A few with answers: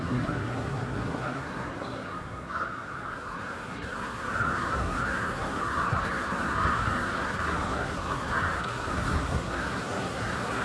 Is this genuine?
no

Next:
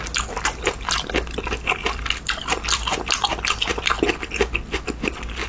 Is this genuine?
yes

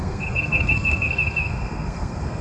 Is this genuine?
no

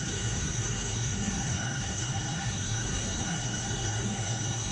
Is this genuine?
no